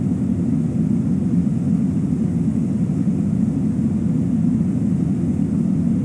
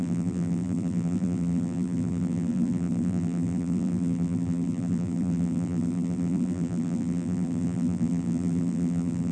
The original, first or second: first